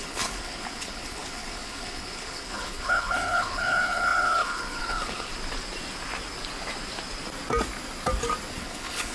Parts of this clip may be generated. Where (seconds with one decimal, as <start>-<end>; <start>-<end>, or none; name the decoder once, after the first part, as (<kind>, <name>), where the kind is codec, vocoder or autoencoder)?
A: 0.0-5.3 (codec, HILCodec); 8.6-9.1